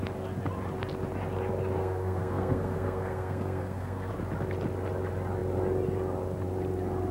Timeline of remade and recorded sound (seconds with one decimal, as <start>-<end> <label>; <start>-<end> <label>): 0.0-1.8 recorded; 1.8-4.1 remade; 4.1-7.1 recorded